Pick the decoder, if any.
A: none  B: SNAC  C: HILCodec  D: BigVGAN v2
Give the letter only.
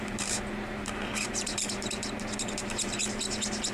D